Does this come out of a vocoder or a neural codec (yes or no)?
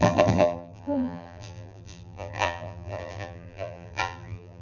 yes